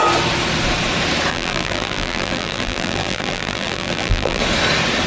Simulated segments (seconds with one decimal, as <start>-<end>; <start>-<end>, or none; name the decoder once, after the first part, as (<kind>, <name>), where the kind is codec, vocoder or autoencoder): 1.3-4.4 (vocoder, BigVGAN v2)